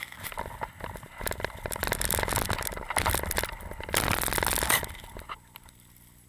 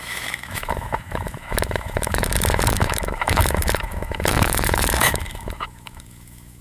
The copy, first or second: second